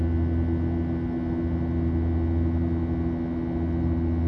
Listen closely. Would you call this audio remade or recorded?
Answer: recorded